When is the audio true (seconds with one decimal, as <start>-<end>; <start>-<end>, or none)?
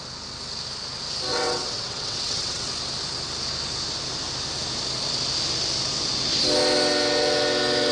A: 0.0-1.3; 2.7-7.9